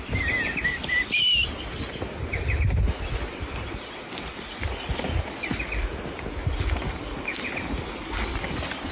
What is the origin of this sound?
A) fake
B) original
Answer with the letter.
B